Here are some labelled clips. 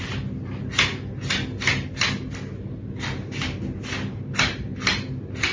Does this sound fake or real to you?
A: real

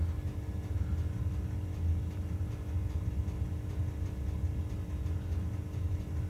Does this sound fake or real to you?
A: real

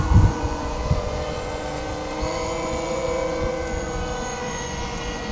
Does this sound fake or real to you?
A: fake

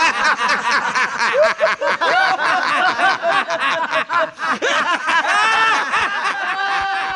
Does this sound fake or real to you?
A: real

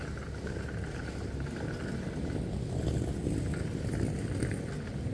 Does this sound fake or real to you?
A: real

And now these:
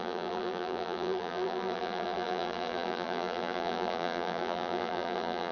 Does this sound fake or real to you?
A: fake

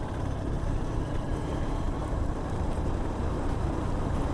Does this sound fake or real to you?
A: fake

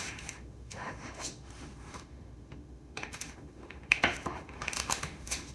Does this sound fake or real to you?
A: fake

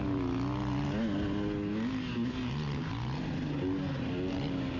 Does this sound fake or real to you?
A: real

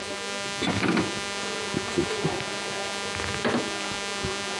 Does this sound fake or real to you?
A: real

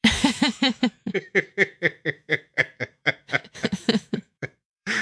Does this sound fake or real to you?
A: fake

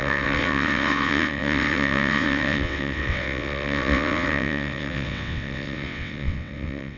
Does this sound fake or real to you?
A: fake